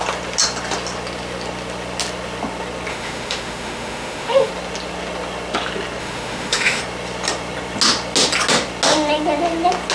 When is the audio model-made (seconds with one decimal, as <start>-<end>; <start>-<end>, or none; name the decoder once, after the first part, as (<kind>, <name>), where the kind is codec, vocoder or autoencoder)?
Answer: 2.9-4.5 (autoencoder, DAC-VAE); 6.0-6.8